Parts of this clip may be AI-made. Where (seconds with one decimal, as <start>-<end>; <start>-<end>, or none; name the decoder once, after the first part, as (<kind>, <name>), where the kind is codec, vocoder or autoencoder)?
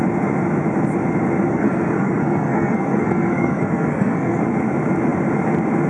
1.5-4.4 (codec, SNAC)